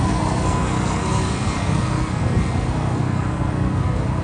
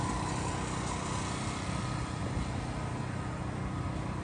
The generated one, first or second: first